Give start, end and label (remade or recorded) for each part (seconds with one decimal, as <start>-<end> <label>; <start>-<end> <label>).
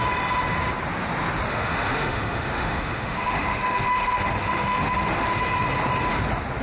0.0-1.5 recorded; 1.5-5.4 remade; 5.4-6.6 recorded